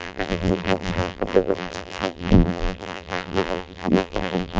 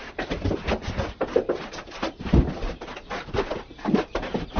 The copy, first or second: first